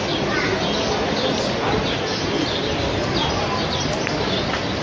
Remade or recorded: recorded